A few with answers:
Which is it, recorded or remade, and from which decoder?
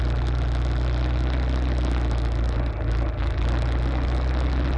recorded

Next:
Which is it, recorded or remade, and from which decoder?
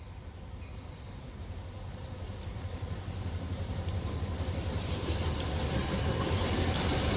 remade, vocoder, BigVGAN v2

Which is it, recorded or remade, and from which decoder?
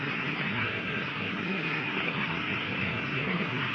remade, codec, SNAC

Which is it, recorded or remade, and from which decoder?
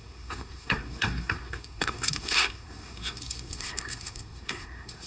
remade, codec, SNAC